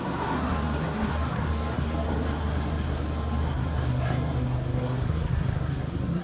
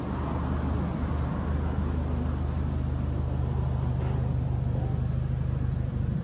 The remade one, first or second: first